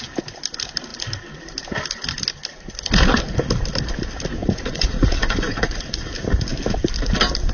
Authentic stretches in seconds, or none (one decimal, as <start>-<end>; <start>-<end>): 0.0-4.4; 6.1-7.5